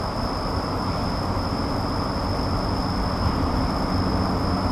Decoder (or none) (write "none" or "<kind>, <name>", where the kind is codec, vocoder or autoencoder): none